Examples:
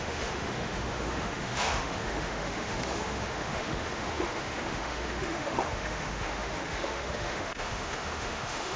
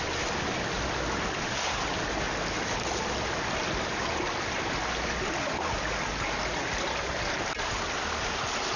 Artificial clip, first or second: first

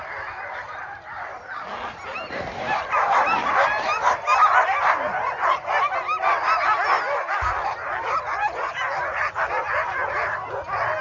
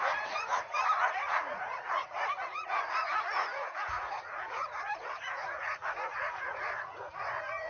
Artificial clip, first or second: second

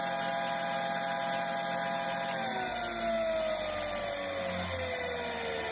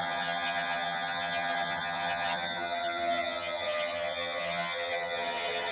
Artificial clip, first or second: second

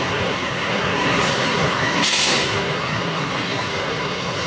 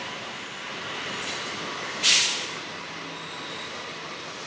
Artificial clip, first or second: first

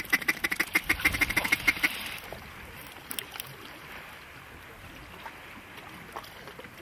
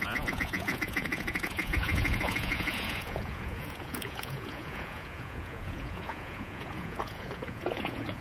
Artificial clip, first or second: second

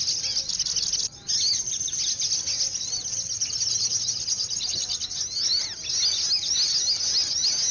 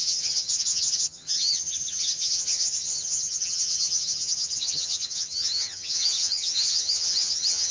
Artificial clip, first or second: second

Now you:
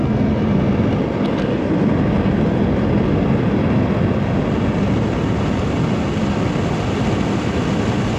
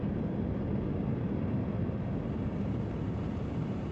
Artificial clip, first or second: second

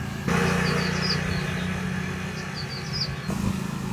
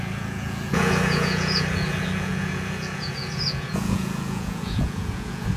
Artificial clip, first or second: second